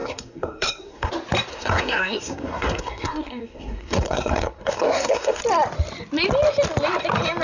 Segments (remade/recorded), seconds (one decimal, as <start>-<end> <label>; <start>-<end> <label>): 0.0-1.1 remade; 1.1-1.5 recorded; 1.5-5.4 remade; 5.4-7.4 recorded